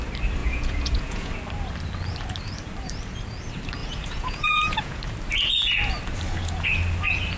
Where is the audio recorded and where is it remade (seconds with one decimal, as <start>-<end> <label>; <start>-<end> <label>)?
0.0-0.4 recorded; 0.4-1.3 remade; 1.3-3.8 recorded; 3.8-5.0 remade; 5.0-7.4 recorded